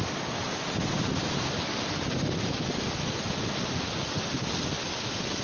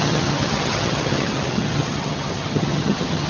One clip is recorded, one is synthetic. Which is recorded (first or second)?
first